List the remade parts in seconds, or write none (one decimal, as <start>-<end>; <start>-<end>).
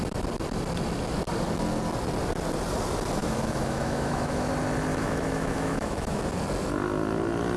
3.2-4.5; 4.9-6.2